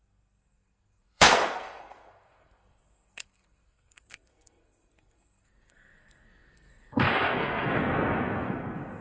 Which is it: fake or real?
fake